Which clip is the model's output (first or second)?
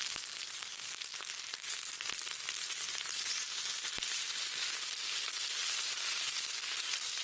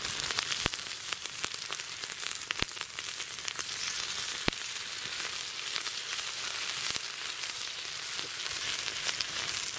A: second